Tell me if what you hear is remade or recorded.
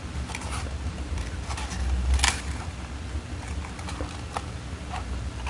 recorded